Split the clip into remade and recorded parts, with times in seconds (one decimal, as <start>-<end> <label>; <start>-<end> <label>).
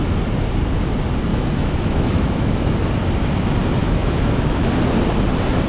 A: 0.0-1.3 recorded; 1.3-2.7 remade; 2.7-3.8 recorded; 3.8-4.7 remade; 4.7-5.7 recorded